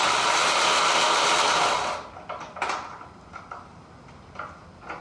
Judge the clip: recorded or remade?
recorded